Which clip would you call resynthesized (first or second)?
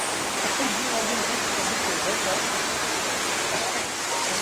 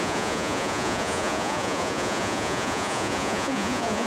second